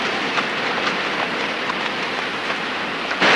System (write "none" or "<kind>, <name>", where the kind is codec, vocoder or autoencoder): none